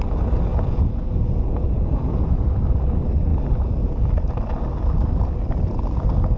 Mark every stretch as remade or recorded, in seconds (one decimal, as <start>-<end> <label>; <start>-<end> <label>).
0.0-0.5 recorded; 0.5-2.4 remade; 2.4-6.4 recorded